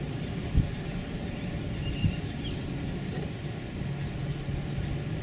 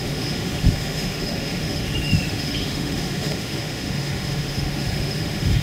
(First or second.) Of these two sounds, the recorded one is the first